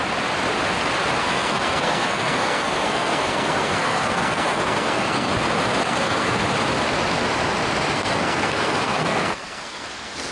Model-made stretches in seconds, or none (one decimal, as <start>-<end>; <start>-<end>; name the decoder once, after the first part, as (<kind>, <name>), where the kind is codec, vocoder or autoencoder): 1.2-5.3 (codec, SNAC); 5.8-6.4; 7.9-10.3